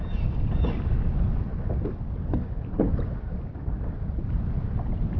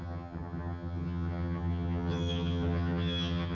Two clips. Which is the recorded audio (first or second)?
first